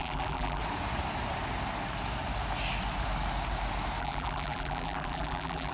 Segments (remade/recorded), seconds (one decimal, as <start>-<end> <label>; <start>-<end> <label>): 0.0-0.6 remade; 0.6-4.0 recorded; 4.0-5.7 remade